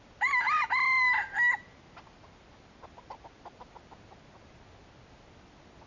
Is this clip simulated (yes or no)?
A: no